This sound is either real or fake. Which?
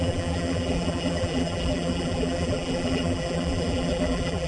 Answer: fake